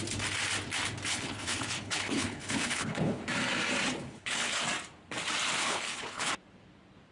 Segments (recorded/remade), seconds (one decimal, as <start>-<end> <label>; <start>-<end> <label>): 0.0-1.1 recorded; 1.1-3.2 remade; 3.2-4.0 recorded; 4.0-4.6 remade; 4.6-5.6 recorded; 5.6-6.3 remade; 6.3-7.1 recorded